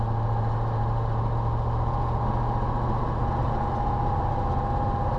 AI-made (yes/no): no